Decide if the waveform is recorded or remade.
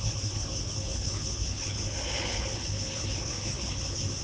remade